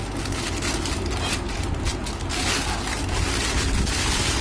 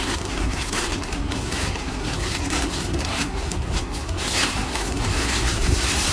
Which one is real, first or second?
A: first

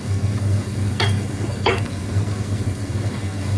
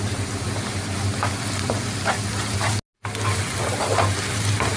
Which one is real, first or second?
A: second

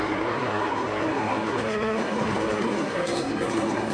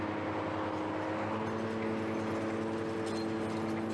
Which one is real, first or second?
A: second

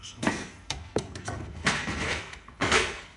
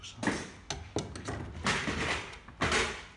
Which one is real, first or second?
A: second